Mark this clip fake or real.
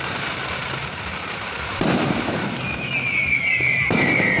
fake